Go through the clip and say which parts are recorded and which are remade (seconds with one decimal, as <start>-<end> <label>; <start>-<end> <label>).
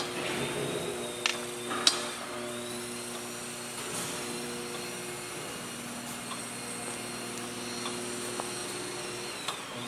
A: 0.0-9.9 recorded